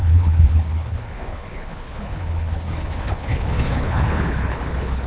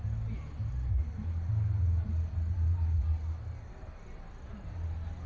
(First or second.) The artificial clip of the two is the first